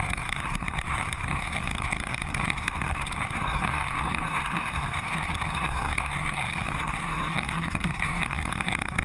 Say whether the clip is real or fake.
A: fake